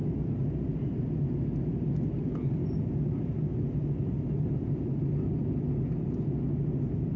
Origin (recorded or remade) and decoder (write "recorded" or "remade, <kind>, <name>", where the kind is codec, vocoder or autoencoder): recorded